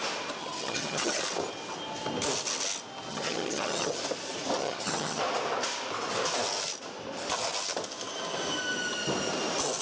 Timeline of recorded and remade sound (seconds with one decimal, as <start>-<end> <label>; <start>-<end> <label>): 0.0-0.4 recorded; 0.4-1.2 remade; 1.2-3.1 recorded; 3.1-4.0 remade; 4.0-4.6 recorded; 4.6-5.2 remade; 5.2-9.8 recorded